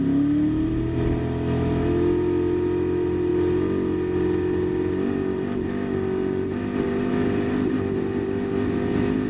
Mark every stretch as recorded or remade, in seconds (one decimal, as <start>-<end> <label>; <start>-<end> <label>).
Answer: 0.0-9.3 recorded